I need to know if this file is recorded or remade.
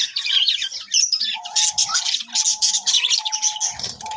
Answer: recorded